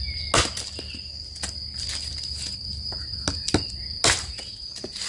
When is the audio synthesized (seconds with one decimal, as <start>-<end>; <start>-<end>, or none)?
none